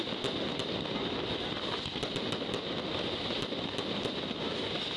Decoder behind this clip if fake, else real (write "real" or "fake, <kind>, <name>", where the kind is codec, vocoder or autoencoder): real